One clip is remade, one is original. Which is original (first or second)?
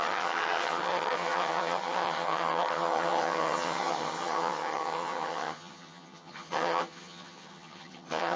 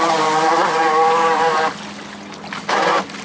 second